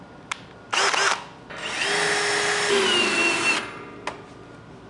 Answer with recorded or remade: recorded